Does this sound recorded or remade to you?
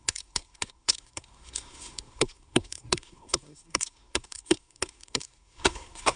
remade